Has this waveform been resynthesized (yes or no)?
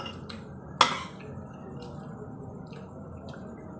no